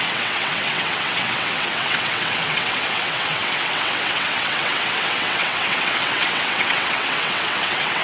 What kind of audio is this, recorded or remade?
remade